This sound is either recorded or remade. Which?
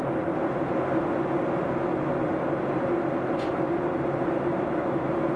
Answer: recorded